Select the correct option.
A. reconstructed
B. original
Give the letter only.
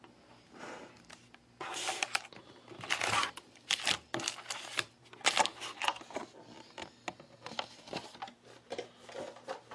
B